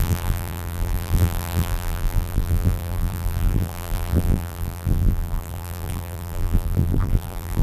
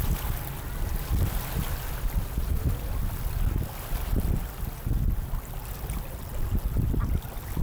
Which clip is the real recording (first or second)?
second